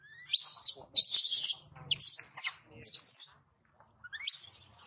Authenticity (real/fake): real